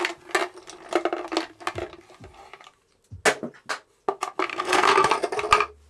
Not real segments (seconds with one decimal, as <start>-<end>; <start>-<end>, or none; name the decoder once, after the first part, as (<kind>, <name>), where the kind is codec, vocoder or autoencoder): 4.5-5.1 (codec, SNAC)